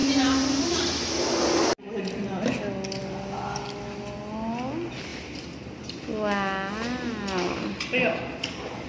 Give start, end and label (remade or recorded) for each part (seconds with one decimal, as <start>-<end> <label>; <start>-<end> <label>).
0.0-8.9 recorded